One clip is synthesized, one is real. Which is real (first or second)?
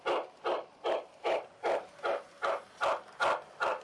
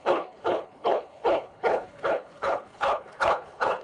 first